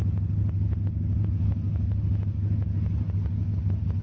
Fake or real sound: real